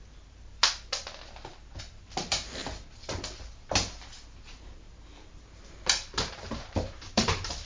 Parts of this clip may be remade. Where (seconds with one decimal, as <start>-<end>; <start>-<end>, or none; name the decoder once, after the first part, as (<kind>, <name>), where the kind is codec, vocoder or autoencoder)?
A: 0.0-0.6 (vocoder, BigVGAN v2); 1.8-2.6; 4.5-7.7